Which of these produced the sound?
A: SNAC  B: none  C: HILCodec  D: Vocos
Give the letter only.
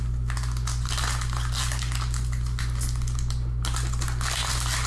B